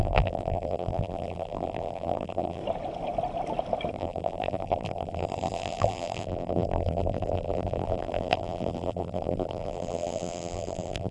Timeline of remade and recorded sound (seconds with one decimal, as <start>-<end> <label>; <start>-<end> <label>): 0.0-2.6 remade; 2.6-3.9 recorded; 3.9-11.1 remade